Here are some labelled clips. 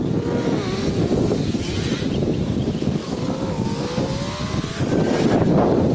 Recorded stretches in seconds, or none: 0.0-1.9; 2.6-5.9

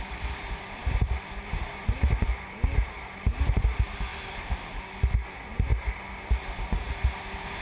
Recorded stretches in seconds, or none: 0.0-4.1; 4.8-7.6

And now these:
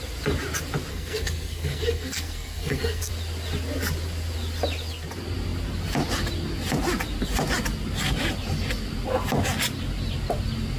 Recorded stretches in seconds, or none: 0.0-0.9; 3.1-10.8

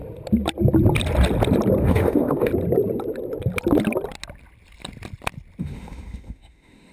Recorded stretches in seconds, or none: 0.0-1.8; 2.5-5.6

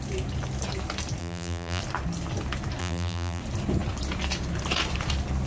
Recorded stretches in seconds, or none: 0.0-1.2; 1.8-2.8; 3.4-5.5

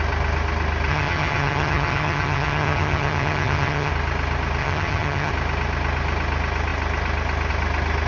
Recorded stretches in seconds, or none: 0.0-0.9; 3.9-4.6; 5.3-8.1